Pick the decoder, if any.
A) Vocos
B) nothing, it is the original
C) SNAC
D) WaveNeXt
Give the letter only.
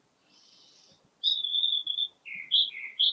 B